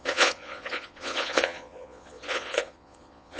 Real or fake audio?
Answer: fake